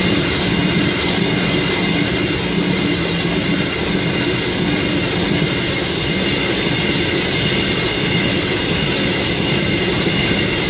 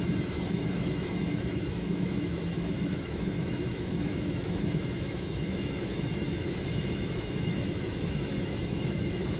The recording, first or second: first